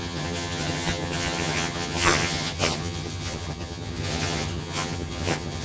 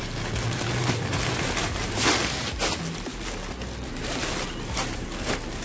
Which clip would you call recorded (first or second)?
second